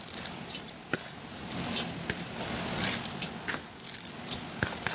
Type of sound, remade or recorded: recorded